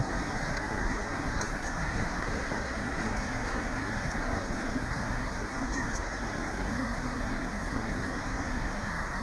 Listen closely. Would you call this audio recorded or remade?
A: remade